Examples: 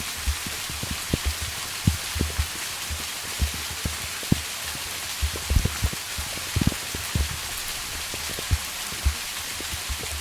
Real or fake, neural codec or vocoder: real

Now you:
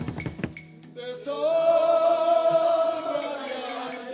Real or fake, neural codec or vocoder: real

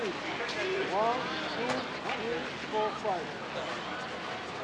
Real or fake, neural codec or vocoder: real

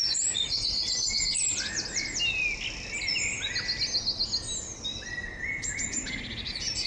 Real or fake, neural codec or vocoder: real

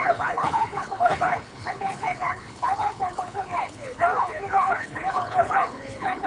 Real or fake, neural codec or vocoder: fake, codec, HILCodec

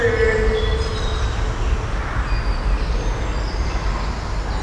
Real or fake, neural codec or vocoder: real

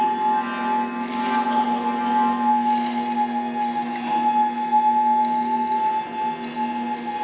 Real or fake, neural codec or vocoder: real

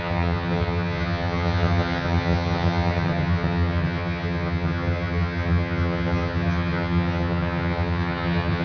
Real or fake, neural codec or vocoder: fake, vocoder, HiFi-GAN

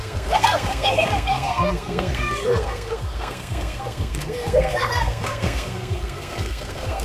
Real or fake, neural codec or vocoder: fake, codec, SNAC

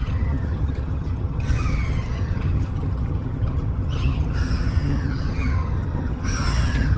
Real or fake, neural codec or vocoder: fake, vocoder, HiFi-GAN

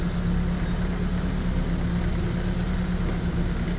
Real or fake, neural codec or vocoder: real